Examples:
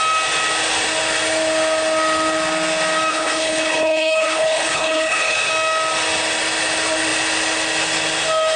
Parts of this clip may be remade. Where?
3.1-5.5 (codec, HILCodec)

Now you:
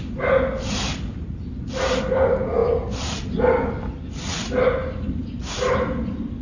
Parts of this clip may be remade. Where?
none

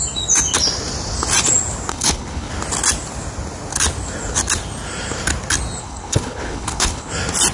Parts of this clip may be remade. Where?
1.9-2.5 (codec, HILCodec); 5.8-7.1